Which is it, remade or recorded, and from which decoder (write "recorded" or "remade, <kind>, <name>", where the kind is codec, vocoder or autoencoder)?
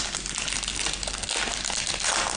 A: recorded